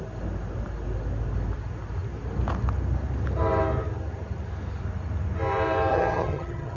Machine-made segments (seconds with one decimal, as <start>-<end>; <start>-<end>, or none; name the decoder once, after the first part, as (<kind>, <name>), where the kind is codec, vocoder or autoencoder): 5.9-6.8 (vocoder, HiFi-GAN)